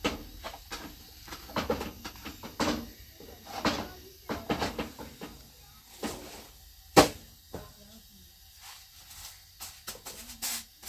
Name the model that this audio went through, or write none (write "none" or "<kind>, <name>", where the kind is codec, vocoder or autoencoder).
none